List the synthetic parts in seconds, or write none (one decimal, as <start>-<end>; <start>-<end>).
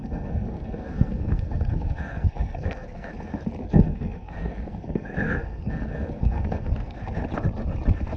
0.0-3.1; 3.6-7.0